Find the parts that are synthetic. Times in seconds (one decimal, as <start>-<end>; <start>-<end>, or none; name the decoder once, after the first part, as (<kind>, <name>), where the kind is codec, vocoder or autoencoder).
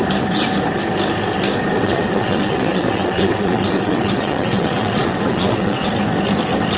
1.8-5.9 (vocoder, WaveNeXt)